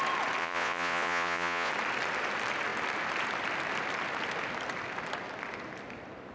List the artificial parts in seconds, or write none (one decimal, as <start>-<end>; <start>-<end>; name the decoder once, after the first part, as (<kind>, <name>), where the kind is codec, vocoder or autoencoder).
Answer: 0.4-1.7 (vocoder, Vocos)